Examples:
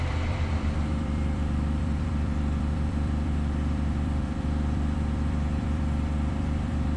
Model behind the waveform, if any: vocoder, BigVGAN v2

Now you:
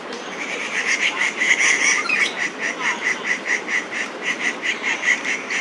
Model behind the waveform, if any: vocoder, BigVGAN v2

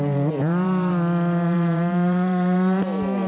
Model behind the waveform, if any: vocoder, BigVGAN v2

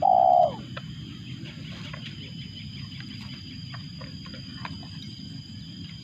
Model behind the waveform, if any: none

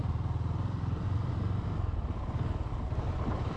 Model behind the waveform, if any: vocoder, BigVGAN v2